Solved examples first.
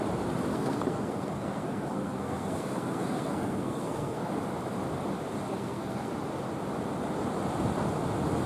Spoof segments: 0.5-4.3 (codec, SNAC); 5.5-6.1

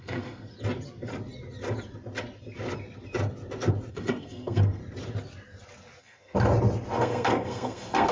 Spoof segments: 0.0-0.5 (codec, SNAC); 3.9-4.8; 6.0-6.5; 7.0-8.1

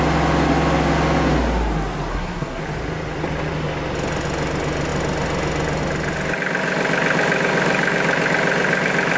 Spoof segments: 2.1-2.6 (codec, SNAC)

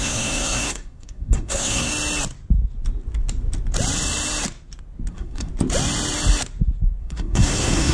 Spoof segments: 0.0-1.9 (codec, SNAC); 5.1-5.5; 7.0-7.9